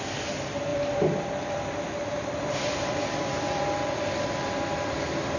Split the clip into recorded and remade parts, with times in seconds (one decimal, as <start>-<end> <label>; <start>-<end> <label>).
0.0-0.7 recorded; 0.7-3.9 remade; 3.9-5.4 recorded